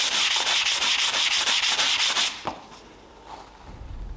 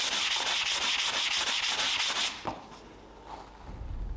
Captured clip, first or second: second